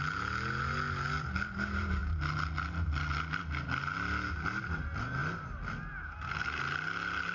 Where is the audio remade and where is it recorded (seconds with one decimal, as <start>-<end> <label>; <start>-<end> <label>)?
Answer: 0.0-7.3 recorded